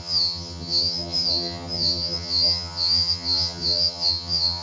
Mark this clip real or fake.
fake